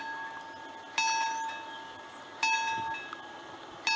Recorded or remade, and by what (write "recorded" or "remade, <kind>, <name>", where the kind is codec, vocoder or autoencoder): recorded